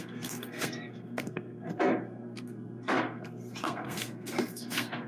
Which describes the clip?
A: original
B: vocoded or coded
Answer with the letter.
B